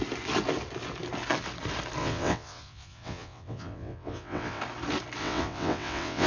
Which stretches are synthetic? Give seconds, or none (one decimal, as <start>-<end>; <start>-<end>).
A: 2.0-4.6; 5.2-6.3